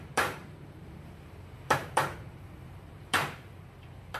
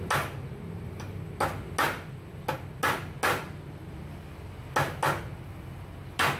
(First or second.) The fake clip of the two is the first